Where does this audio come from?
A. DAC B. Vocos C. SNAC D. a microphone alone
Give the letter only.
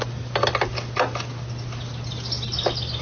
D